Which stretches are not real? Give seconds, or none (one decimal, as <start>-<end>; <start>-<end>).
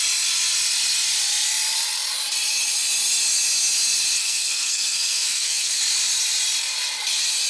4.2-5.8